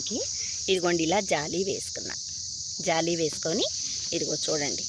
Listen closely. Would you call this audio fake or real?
real